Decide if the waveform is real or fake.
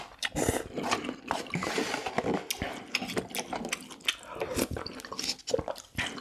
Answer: real